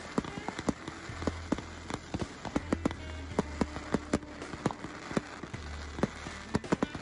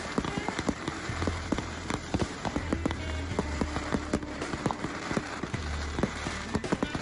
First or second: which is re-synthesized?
second